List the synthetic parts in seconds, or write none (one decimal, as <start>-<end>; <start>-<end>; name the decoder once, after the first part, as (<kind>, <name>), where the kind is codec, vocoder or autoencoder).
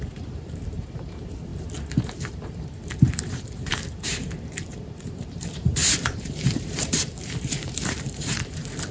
0.0-1.5 (vocoder, BigVGAN v2); 2.0-8.9